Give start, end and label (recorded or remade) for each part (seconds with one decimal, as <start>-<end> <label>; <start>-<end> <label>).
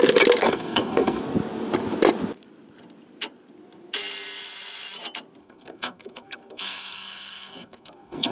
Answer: 0.0-0.4 recorded; 0.4-1.2 remade; 1.2-5.4 recorded; 5.4-8.3 remade